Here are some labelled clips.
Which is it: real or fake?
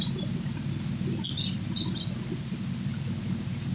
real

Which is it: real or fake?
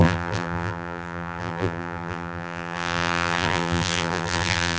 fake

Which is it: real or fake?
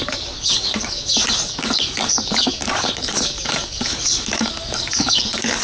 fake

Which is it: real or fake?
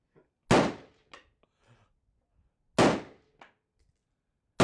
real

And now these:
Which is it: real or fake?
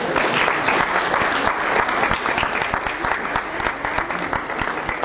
real